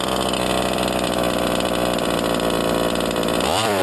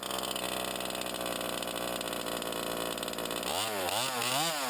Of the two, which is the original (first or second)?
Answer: second